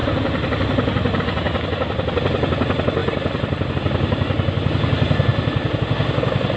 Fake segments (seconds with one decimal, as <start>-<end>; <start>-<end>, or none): none